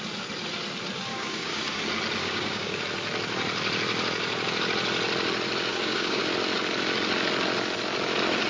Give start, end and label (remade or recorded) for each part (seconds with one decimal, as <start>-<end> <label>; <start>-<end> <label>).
0.0-1.1 recorded; 1.1-1.8 remade; 1.8-2.2 recorded; 2.2-2.8 remade; 2.8-5.7 recorded; 5.7-6.2 remade; 6.2-8.5 recorded